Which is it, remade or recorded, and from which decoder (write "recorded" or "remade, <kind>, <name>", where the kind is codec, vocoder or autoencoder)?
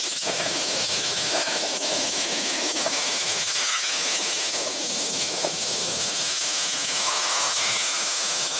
remade, autoencoder, DAC-VAE